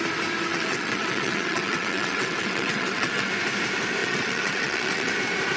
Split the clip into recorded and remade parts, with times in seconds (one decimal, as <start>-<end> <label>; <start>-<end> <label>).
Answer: 0.0-0.5 recorded; 0.5-3.3 remade; 3.3-4.0 recorded; 4.0-5.1 remade; 5.1-5.6 recorded